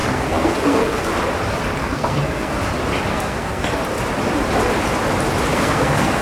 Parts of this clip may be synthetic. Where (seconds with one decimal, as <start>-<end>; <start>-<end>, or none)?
0.0-1.1; 1.8-2.6; 3.1-3.8; 5.5-6.2

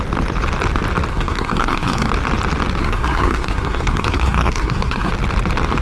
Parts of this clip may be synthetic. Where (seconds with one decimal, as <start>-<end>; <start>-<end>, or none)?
1.1-2.1; 2.8-5.1

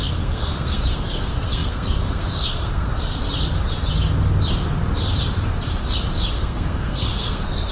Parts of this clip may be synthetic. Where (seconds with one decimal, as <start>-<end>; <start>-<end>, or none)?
0.0-3.2; 6.3-7.7

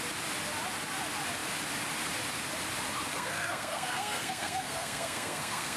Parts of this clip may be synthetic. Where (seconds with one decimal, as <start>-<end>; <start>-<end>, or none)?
3.1-5.8

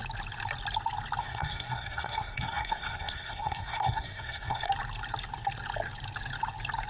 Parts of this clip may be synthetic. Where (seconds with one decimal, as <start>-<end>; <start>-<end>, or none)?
1.2-4.7

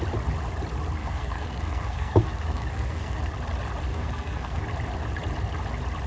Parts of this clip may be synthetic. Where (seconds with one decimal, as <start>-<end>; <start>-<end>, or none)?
1.0-3.2; 3.9-4.6